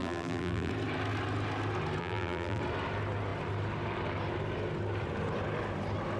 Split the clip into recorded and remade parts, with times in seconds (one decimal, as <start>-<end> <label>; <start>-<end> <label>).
0.0-0.7 remade; 0.7-2.0 recorded; 2.0-2.6 remade; 2.6-6.2 recorded